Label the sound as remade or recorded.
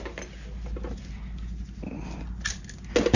recorded